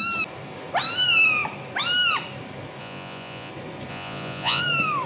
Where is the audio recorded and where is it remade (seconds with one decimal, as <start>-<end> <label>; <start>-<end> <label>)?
0.0-2.8 recorded; 2.8-3.5 remade; 3.5-3.9 recorded; 3.9-4.6 remade; 4.6-5.1 recorded